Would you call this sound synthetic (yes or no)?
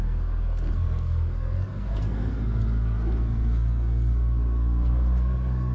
yes